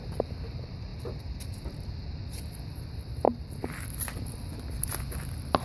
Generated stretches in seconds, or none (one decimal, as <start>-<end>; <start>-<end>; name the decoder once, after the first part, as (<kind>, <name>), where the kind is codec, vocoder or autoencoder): none